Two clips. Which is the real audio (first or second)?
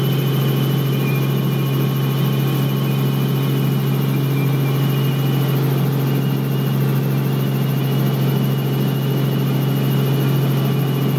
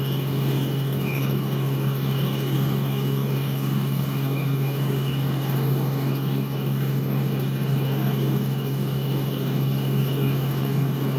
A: first